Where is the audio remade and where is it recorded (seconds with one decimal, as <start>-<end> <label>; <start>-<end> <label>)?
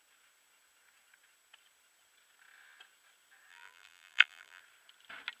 0.0-3.5 recorded; 3.5-4.6 remade; 4.6-5.4 recorded